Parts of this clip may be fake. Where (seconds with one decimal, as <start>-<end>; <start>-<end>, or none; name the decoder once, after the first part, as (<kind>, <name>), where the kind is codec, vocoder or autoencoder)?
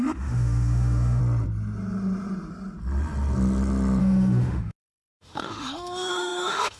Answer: 0.0-1.2 (autoencoder, DAC-VAE); 4.0-6.8